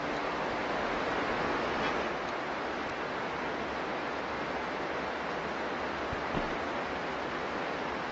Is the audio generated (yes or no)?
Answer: no